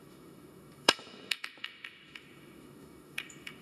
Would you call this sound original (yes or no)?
no